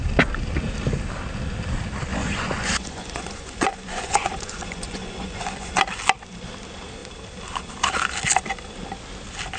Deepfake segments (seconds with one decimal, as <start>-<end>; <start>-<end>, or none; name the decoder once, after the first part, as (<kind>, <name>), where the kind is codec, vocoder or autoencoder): 2.1-5.8 (vocoder, Vocos)